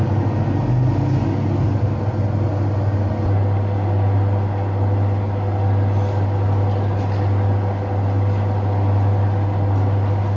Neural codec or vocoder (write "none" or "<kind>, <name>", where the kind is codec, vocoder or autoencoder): none